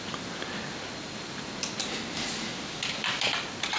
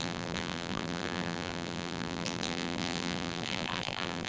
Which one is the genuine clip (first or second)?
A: first